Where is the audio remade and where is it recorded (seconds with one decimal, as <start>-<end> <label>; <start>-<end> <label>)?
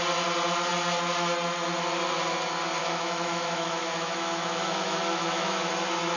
0.0-2.8 recorded; 2.8-5.7 remade; 5.7-6.2 recorded